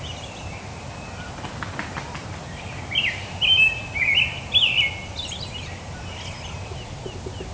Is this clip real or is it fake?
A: real